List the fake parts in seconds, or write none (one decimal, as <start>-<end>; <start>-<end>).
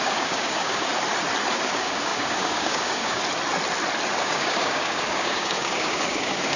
0.0-0.9; 1.5-3.2; 4.1-6.6